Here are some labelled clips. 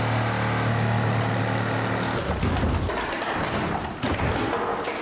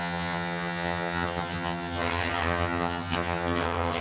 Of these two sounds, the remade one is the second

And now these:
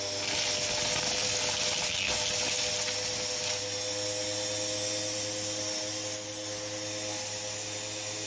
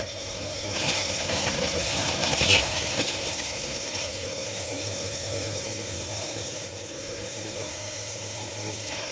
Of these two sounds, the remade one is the second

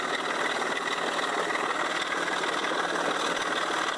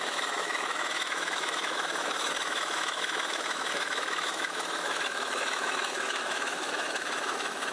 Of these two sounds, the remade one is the second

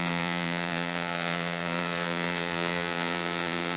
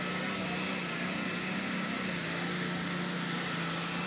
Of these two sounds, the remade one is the first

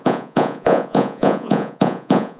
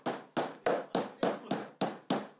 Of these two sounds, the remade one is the first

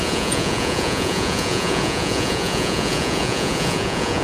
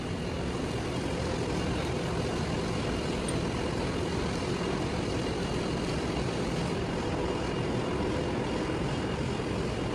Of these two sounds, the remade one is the first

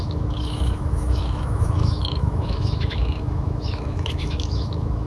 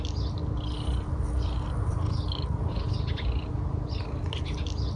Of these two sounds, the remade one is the first